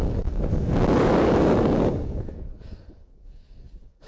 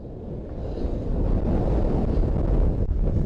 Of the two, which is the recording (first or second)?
second